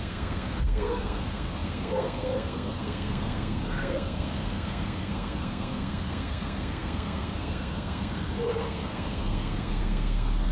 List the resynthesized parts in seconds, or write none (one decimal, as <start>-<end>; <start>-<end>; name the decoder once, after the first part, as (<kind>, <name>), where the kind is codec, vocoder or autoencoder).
0.0-10.5 (codec, SNAC)